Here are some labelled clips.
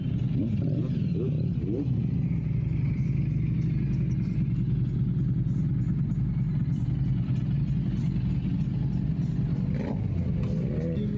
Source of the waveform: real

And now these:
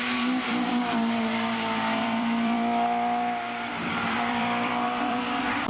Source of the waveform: fake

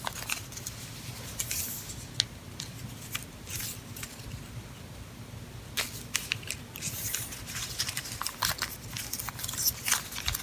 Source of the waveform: real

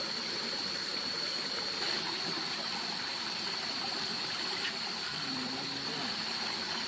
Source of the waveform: fake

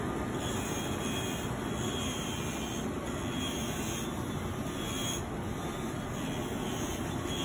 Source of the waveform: real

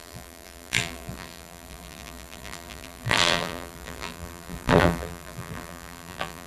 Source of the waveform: fake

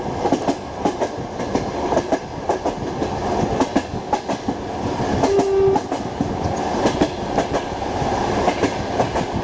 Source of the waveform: real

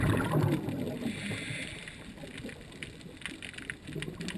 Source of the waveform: real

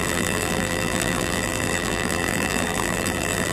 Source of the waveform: fake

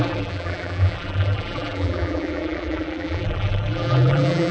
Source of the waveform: fake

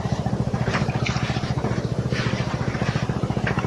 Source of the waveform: fake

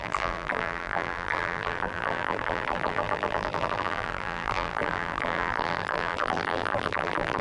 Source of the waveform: fake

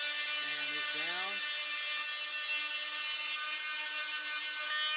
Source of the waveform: real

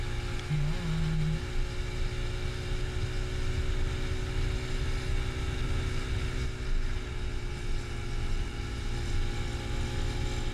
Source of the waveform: real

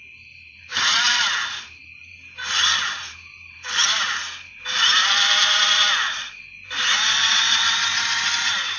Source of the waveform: fake